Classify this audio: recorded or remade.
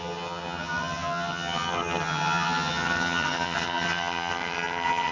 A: remade